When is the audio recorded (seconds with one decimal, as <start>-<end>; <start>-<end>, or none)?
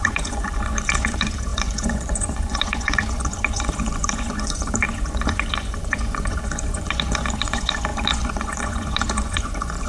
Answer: none